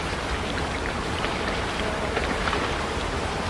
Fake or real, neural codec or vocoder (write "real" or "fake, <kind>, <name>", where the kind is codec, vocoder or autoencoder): fake, vocoder, BigVGAN v2